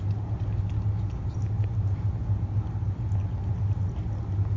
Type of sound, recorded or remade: recorded